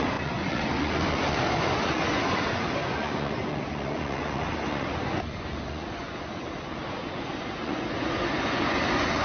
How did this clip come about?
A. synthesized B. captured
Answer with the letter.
A